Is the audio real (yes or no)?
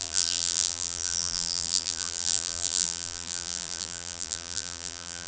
no